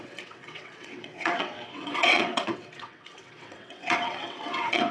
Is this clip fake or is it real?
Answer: fake